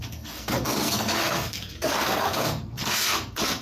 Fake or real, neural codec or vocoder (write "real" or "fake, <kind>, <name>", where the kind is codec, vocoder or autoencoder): fake, codec, SNAC